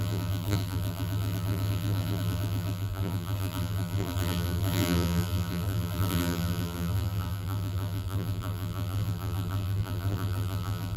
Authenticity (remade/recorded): remade